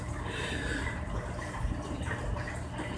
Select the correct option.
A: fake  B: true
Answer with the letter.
A